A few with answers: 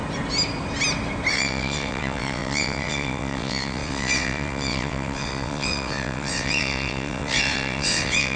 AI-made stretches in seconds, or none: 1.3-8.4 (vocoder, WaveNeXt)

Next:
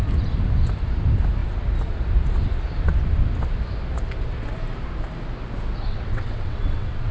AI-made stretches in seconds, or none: 5.8-7.1 (vocoder, WaveNeXt)

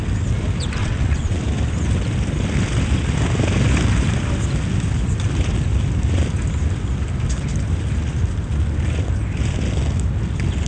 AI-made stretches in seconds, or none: 0.8-1.4 (vocoder, WaveNeXt)

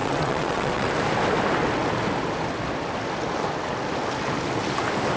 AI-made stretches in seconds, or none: 0.0-0.9 (vocoder, WaveNeXt)

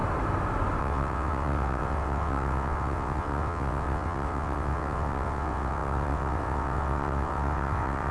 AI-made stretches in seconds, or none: 0.8-8.1 (vocoder, WaveNeXt)

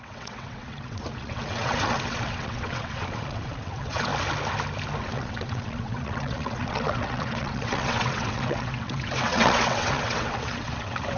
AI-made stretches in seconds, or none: 0.0-4.1 (vocoder, WaveNeXt); 5.0-11.2